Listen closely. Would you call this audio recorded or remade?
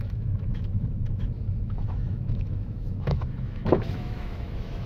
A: remade